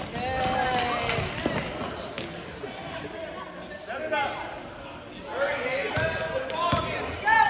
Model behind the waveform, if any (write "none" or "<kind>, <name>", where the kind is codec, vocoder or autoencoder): none